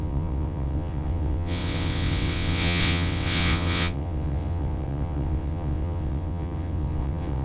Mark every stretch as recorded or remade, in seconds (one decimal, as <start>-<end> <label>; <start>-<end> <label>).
0.0-7.4 remade

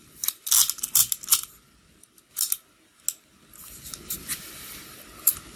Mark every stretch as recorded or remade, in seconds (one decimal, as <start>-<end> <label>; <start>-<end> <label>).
0.0-5.6 recorded